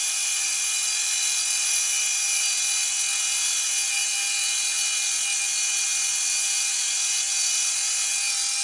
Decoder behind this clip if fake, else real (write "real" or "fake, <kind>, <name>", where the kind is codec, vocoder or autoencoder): real